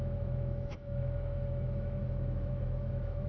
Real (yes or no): no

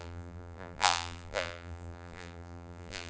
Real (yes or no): no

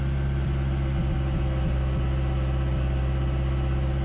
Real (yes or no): yes